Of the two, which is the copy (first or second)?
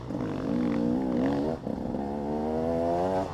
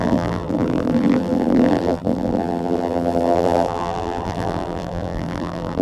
second